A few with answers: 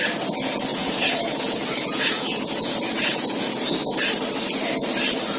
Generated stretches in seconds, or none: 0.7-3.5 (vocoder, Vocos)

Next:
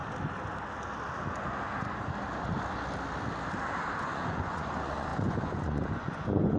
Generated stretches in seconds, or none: 4.0-6.6 (vocoder, Vocos)